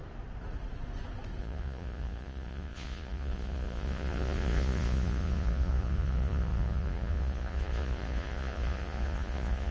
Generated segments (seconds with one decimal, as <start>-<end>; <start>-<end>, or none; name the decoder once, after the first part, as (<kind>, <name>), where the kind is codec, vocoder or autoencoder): 1.4-9.7 (vocoder, Vocos)